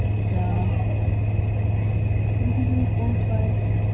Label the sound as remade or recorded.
recorded